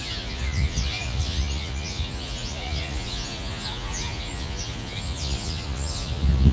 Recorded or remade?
remade